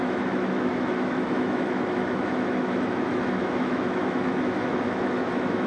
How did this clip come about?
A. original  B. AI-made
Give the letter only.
B